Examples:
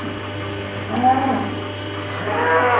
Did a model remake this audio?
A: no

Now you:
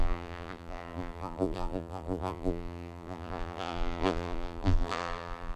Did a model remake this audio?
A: yes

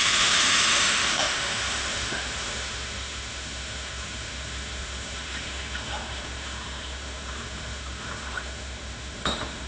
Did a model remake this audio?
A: yes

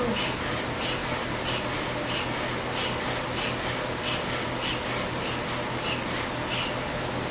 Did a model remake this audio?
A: no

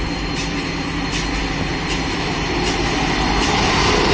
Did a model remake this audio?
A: no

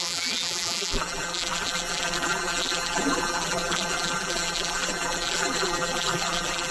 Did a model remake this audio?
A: yes